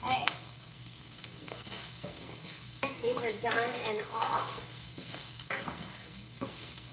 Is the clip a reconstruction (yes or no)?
yes